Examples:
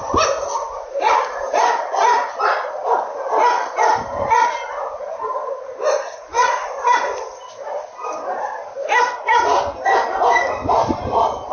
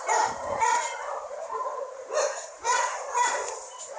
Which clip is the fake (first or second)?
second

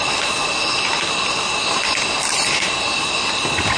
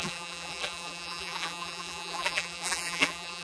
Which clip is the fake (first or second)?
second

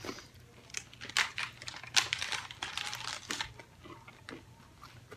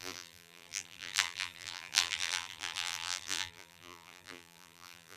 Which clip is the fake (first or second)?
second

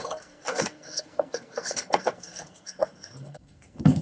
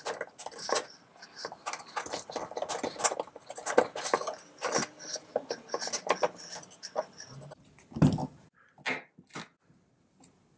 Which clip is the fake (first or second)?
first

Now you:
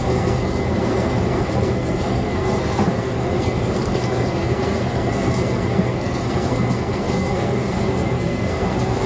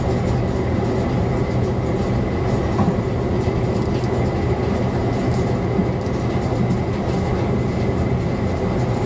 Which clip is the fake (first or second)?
first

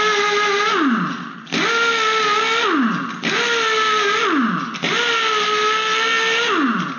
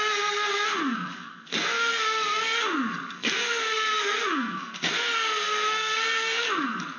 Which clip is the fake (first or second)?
second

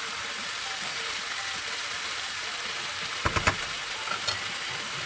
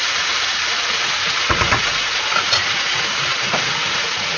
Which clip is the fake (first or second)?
second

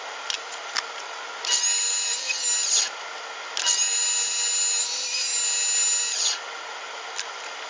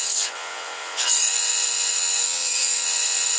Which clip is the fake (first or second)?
second